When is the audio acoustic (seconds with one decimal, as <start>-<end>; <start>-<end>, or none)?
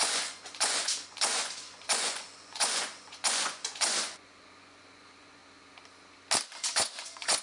5.4-6.5